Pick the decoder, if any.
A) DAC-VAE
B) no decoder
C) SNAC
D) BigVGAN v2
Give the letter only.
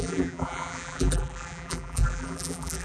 D